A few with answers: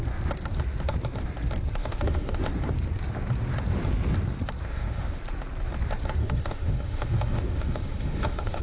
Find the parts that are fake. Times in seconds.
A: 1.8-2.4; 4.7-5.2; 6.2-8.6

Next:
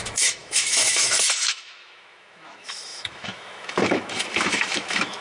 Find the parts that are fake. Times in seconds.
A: 0.0-5.2

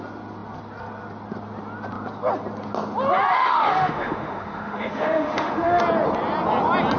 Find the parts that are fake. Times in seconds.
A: 3.3-5.8

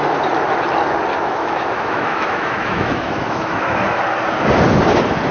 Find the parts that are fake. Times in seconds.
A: 1.1-4.0